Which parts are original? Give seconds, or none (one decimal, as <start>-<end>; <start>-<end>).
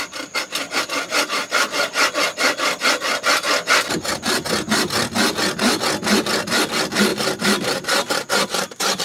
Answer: 0.0-7.1